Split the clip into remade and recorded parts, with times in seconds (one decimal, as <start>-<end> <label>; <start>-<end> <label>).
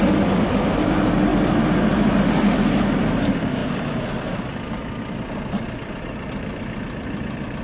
0.0-3.6 remade; 3.6-5.5 recorded; 5.5-7.6 remade